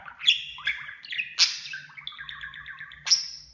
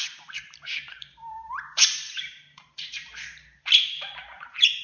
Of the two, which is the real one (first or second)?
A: first